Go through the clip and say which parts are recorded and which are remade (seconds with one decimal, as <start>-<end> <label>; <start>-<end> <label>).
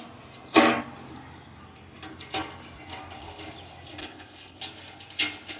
0.0-4.0 recorded; 4.0-4.6 remade; 4.6-5.6 recorded